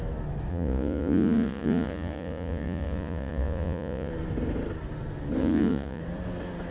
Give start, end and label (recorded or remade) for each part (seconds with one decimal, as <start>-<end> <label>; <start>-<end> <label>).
0.0-0.5 recorded; 0.5-4.1 remade; 4.1-5.4 recorded; 5.4-6.0 remade; 6.0-6.7 recorded